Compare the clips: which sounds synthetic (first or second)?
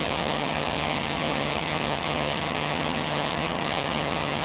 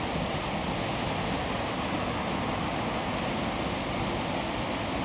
first